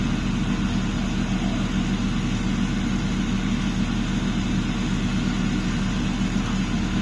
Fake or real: real